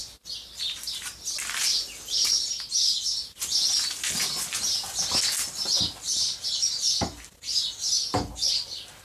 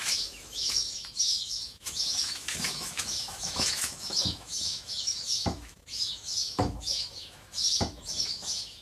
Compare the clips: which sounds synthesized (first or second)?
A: second